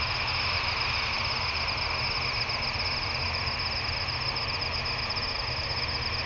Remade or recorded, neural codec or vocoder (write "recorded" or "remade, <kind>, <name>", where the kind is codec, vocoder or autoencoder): recorded